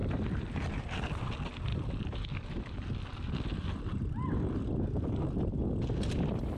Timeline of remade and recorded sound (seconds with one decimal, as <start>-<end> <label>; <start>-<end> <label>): 0.0-0.9 remade; 0.9-1.7 recorded; 1.7-3.3 remade; 3.3-6.6 recorded